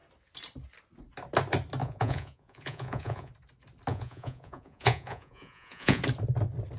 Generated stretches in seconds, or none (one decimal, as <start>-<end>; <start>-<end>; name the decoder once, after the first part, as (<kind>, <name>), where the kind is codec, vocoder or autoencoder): 1.8-3.3 (vocoder, Vocos); 3.9-6.0